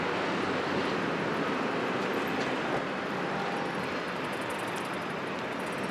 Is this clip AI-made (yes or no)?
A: no